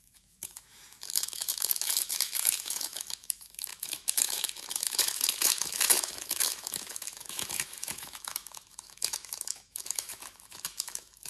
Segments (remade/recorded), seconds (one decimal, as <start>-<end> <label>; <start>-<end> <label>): 0.0-11.3 remade